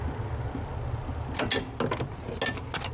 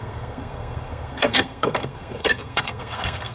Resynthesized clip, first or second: second